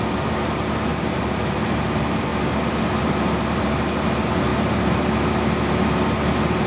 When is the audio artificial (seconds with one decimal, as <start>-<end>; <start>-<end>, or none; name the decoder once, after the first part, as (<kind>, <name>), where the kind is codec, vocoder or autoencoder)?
none